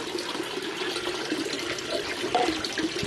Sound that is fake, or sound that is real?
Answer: real